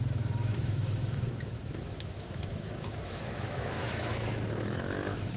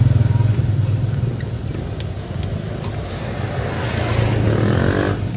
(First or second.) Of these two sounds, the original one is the second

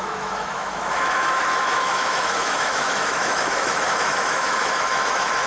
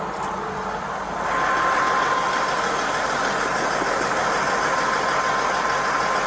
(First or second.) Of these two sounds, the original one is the second